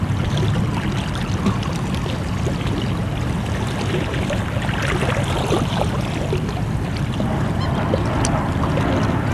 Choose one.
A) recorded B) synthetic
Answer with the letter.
A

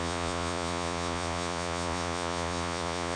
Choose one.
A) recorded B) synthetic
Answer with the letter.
B